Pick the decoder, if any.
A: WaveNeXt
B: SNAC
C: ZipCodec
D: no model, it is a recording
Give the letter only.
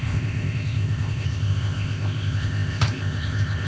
C